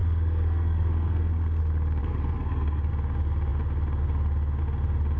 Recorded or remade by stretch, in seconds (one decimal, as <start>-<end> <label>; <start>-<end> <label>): 0.0-1.6 remade; 1.6-2.0 recorded; 2.0-2.9 remade; 2.9-5.2 recorded